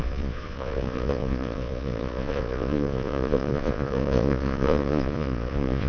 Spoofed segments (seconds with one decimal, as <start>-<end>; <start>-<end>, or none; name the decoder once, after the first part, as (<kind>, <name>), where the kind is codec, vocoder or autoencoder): 0.0-5.9 (vocoder, Vocos)